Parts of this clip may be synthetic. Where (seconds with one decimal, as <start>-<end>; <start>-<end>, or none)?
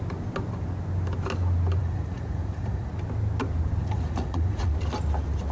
1.8-2.9; 3.8-4.7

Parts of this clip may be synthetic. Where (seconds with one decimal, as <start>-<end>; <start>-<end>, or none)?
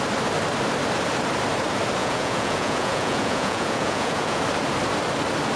2.0-4.4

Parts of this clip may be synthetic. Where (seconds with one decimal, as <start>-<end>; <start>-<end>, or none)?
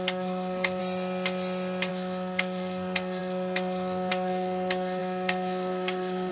0.0-0.8; 1.9-6.3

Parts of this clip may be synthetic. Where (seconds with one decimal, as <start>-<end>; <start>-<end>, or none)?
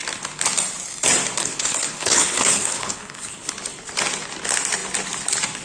1.4-3.5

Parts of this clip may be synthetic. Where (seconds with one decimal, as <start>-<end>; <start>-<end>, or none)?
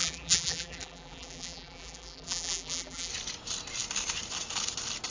0.0-3.1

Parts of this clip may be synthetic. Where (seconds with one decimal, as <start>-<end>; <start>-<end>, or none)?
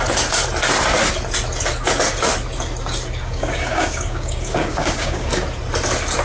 3.2-5.4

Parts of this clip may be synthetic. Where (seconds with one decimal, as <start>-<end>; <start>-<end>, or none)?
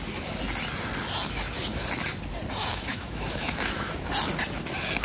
2.7-4.1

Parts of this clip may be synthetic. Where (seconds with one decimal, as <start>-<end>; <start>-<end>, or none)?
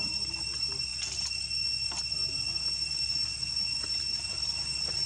none